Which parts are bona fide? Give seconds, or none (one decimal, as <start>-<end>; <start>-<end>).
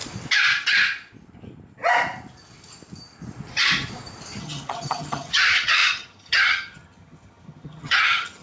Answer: 0.0-4.4